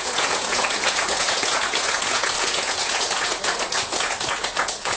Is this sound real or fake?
fake